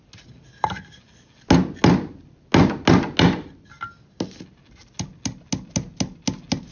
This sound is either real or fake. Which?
real